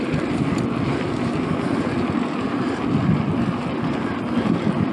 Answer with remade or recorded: recorded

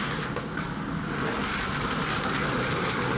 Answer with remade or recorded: recorded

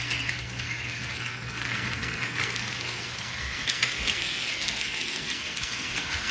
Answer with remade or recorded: remade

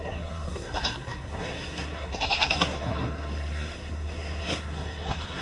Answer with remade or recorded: remade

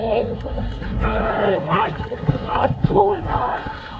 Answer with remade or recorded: remade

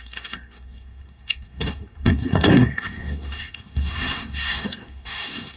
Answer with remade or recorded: remade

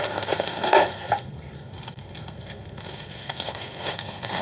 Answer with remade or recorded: remade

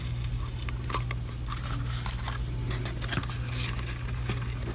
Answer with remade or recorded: recorded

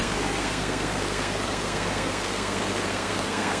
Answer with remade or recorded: remade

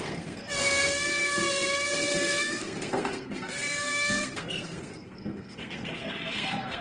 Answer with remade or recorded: remade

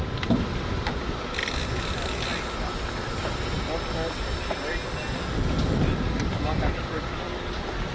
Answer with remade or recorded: recorded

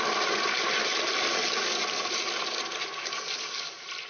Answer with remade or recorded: recorded